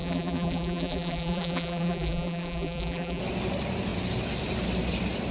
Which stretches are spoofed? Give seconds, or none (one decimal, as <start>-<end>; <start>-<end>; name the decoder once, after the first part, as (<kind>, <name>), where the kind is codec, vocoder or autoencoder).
0.0-3.2 (vocoder, BigVGAN v2)